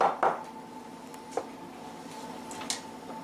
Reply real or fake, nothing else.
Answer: real